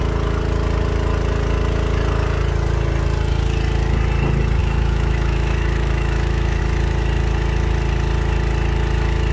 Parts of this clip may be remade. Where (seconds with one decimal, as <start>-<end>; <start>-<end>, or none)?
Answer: 4.6-6.6